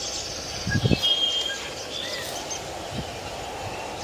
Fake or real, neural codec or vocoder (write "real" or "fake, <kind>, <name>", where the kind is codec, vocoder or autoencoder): real